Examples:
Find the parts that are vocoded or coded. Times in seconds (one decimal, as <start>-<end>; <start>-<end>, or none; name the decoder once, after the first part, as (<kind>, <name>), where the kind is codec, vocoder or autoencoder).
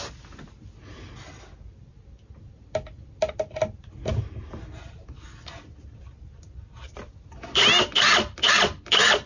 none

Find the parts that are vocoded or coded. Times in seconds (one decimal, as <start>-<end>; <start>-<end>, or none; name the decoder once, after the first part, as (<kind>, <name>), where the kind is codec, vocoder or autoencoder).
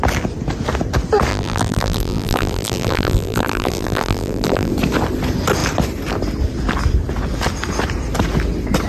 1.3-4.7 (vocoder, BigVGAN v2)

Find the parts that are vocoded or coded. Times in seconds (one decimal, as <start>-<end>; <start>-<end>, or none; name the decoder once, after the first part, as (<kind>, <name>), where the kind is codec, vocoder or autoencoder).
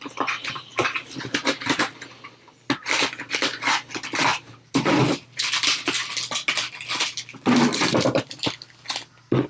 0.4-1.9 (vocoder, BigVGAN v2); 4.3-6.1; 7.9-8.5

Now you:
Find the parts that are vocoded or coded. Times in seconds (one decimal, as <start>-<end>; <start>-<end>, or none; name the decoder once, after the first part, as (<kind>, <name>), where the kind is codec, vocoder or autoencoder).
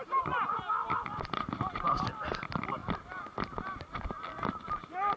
0.0-5.2 (vocoder, BigVGAN v2)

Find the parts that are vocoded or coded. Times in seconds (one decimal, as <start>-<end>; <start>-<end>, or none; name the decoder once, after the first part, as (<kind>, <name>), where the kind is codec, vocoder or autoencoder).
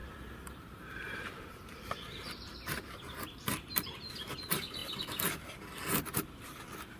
0.0-3.5 (vocoder, BigVGAN v2)